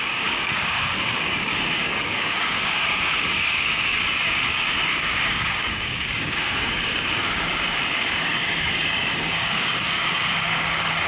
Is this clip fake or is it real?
fake